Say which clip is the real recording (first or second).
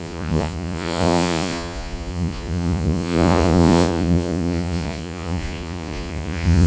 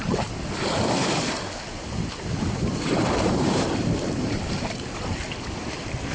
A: second